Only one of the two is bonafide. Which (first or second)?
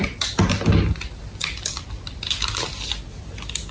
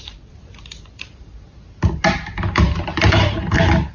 first